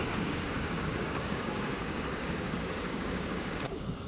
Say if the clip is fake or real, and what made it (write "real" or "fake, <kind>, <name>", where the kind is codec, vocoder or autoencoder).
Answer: fake, codec, DAC